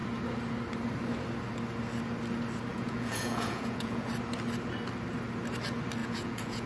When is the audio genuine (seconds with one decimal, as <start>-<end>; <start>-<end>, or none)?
0.0-2.7; 4.1-6.0